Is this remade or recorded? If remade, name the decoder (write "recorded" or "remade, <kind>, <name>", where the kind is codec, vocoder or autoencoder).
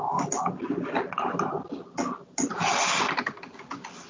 recorded